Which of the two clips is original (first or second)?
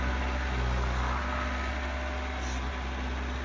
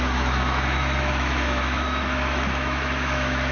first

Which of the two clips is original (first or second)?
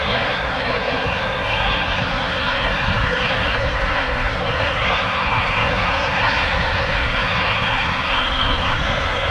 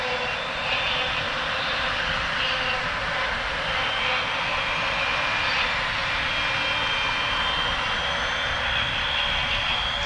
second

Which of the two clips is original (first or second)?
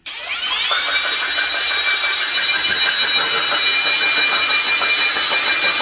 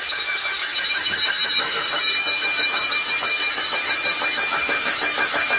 first